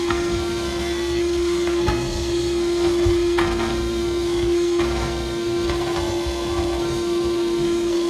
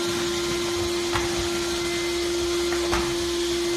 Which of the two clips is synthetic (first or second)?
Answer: first